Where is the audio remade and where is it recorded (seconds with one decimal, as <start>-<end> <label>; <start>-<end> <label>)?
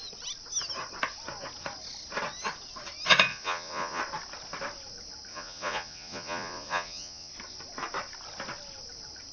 0.0-3.3 recorded; 3.3-4.0 remade; 4.0-5.3 recorded; 5.3-7.3 remade; 7.3-9.3 recorded